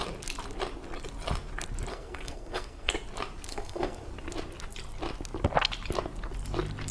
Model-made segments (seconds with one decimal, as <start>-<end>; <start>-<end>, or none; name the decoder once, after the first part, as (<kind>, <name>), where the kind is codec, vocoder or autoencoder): 1.9-2.9 (codec, SNAC); 3.5-4.1